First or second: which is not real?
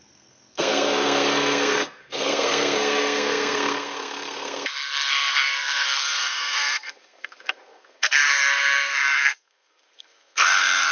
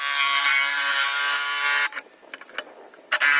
first